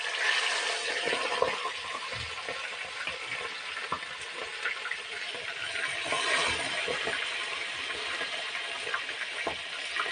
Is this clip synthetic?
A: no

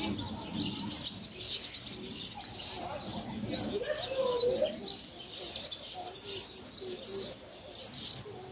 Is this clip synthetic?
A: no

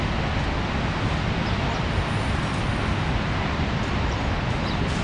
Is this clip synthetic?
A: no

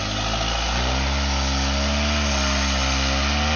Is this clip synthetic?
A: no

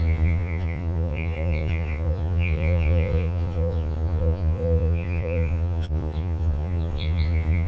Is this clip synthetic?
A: yes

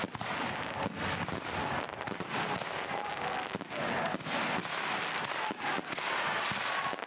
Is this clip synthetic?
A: no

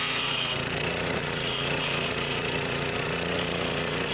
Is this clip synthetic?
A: yes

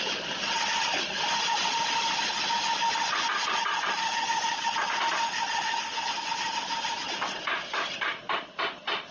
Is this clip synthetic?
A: no